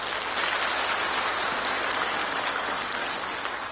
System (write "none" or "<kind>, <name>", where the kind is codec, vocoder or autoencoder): none